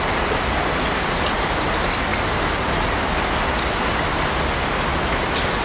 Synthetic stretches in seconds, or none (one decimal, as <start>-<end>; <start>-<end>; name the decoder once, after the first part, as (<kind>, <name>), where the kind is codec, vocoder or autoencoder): none